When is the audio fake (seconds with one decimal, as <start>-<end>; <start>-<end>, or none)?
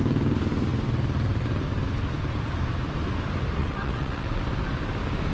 3.6-4.4